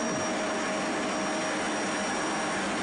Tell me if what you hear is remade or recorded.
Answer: recorded